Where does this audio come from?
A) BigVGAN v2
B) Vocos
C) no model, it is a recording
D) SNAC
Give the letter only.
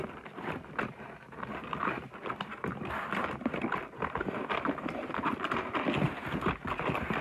C